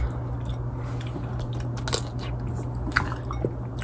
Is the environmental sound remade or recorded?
recorded